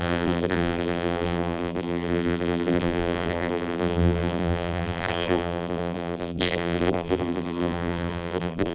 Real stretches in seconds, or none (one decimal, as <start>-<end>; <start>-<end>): none